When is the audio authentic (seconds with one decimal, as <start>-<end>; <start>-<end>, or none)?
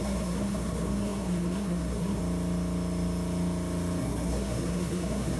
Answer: 2.2-4.0